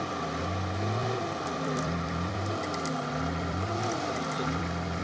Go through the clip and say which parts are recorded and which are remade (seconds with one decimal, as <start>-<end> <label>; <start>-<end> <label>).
0.0-5.0 remade